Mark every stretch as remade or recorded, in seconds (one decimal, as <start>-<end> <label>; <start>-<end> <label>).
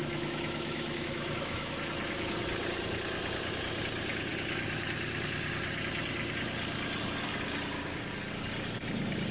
0.0-1.7 remade; 1.7-9.3 recorded